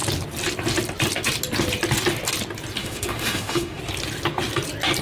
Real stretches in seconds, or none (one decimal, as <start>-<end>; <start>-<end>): 0.0-2.8; 3.8-5.0